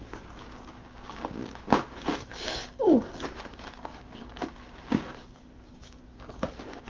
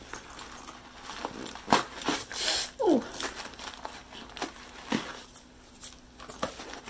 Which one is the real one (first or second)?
second